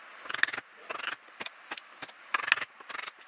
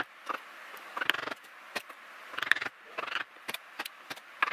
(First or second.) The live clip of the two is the first